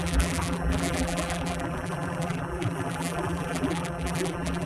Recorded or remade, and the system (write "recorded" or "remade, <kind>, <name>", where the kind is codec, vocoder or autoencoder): remade, vocoder, BigVGAN v2